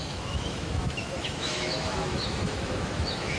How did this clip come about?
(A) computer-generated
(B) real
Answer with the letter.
A